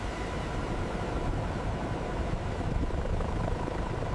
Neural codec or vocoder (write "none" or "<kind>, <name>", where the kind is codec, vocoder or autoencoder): vocoder, BigVGAN v2